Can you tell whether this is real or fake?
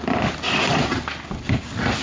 fake